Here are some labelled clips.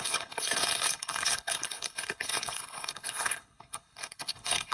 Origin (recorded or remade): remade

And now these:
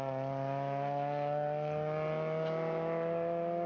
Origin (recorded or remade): recorded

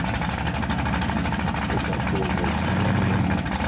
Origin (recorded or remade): recorded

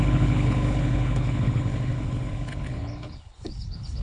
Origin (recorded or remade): remade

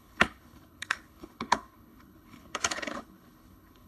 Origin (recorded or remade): remade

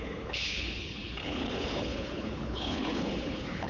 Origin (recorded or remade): remade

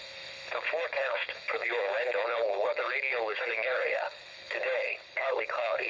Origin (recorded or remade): remade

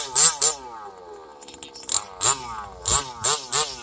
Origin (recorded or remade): recorded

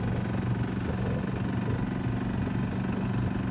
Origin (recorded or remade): recorded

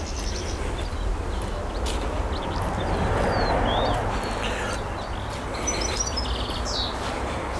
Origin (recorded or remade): recorded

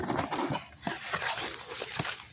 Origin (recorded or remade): recorded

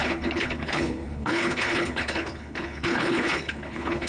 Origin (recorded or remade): remade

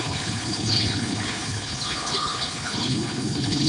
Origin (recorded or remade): remade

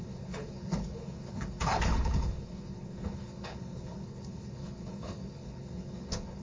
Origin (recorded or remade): remade